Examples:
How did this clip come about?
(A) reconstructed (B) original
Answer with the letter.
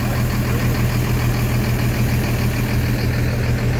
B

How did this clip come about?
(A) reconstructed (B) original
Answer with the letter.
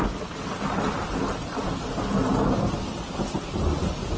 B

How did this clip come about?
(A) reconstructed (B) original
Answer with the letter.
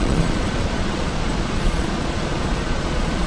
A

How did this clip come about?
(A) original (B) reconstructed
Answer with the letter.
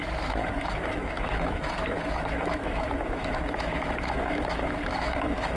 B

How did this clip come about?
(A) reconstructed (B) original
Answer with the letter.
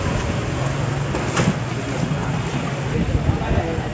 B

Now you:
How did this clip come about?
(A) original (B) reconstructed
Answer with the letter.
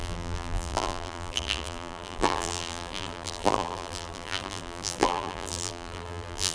B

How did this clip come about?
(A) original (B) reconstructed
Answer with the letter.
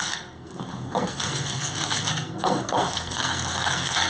B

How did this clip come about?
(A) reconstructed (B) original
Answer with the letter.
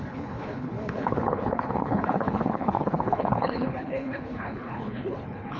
A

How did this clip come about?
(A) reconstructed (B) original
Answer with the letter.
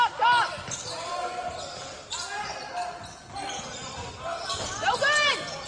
B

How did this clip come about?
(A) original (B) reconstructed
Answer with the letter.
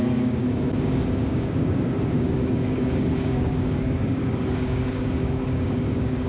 B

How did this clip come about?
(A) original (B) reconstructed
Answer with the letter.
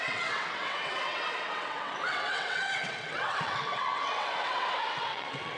B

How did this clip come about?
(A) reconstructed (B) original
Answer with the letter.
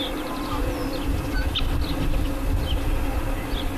B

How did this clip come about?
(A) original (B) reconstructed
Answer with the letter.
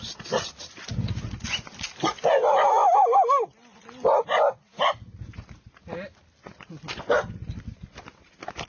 A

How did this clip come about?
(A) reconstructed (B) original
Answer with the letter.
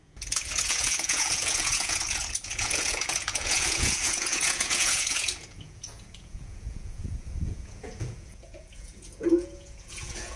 A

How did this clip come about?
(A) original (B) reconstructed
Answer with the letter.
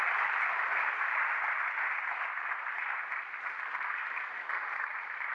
A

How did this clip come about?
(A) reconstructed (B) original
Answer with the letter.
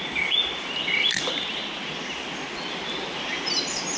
B